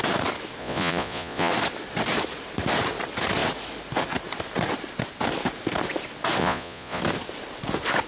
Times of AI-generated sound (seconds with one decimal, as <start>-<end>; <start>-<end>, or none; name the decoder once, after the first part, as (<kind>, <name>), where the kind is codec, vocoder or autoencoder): 0.6-1.5 (vocoder, Vocos); 6.4-7.0